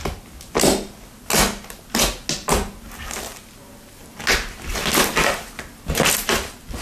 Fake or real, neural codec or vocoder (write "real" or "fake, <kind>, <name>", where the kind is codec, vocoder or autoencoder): real